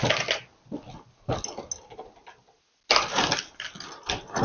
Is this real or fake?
real